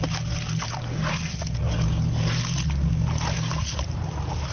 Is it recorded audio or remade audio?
recorded